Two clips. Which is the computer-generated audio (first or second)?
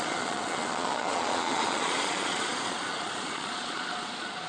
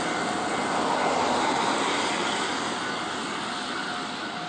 first